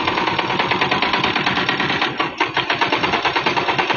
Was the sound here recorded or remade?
recorded